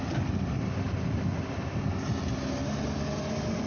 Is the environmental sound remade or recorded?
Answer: recorded